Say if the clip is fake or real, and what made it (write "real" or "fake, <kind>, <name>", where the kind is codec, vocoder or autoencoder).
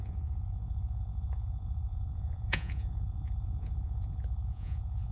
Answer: fake, vocoder, Vocos